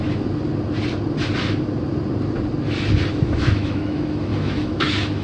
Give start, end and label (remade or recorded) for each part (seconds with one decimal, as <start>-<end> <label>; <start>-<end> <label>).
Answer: 0.0-3.1 recorded; 3.1-5.2 remade